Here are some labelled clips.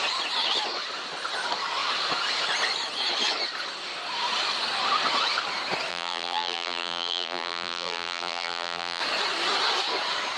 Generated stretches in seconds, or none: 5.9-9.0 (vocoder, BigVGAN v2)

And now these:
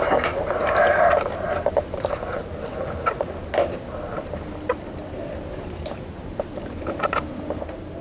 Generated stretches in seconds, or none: 0.0-2.4 (vocoder, BigVGAN v2); 5.4-8.0

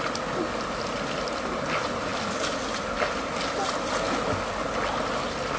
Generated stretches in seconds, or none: none

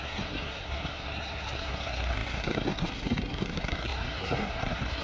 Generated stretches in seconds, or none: 0.0-5.0 (codec, SNAC)